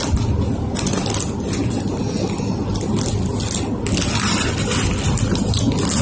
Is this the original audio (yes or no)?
yes